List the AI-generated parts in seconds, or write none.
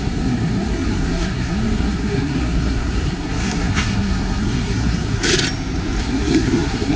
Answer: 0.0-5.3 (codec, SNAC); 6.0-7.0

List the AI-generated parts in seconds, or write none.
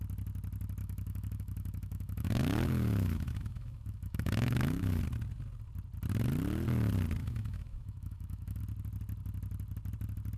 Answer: 0.8-5.0 (autoencoder, DAC-VAE); 7.2-8.6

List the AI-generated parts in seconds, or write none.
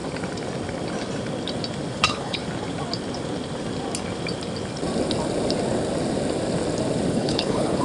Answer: 1.9-2.4 (codec, HILCodec); 7.1-7.8